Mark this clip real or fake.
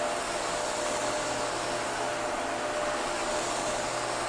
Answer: real